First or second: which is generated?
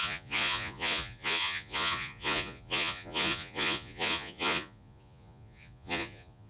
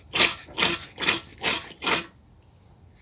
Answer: first